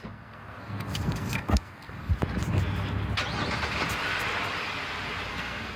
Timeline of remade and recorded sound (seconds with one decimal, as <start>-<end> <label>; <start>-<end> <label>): 0.0-2.1 remade; 2.1-5.3 recorded; 5.3-5.8 remade